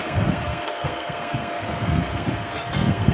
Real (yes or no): no